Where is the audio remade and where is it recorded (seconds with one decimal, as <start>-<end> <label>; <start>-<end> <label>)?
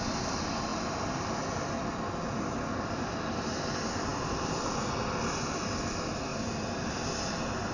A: 0.0-7.7 recorded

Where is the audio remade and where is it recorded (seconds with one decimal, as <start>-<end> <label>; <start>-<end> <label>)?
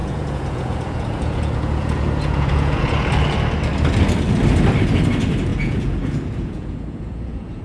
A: 0.0-3.1 remade; 3.1-5.5 recorded; 5.5-7.6 remade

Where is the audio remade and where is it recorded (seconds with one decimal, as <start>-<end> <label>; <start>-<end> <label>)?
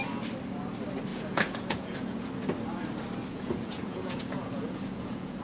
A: 0.0-1.1 recorded; 1.1-2.3 remade; 2.3-3.3 recorded; 3.3-5.4 remade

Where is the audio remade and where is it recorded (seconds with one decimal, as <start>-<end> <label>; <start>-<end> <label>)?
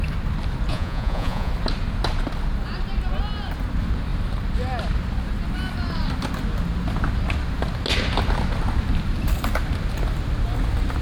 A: 0.0-0.7 recorded; 0.7-1.5 remade; 1.5-11.0 recorded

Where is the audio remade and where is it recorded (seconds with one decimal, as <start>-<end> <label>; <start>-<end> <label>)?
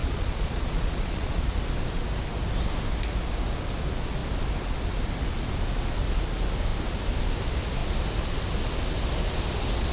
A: 0.0-1.6 remade; 1.6-9.9 recorded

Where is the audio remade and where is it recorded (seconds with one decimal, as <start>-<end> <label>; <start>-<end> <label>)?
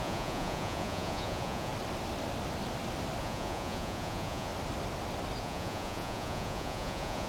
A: 0.0-1.7 remade; 1.7-3.2 recorded; 3.2-4.5 remade; 4.5-5.4 recorded; 5.4-7.3 remade